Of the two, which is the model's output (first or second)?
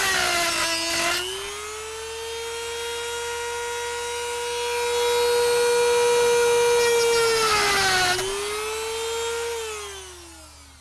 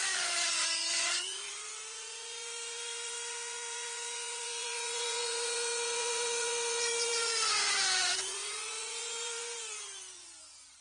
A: second